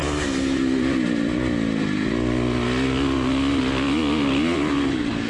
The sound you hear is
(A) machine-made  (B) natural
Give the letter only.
B